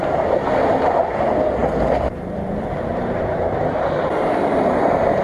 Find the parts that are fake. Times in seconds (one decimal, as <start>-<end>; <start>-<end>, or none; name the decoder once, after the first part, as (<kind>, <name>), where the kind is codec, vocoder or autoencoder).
1.6-4.7 (vocoder, BigVGAN v2)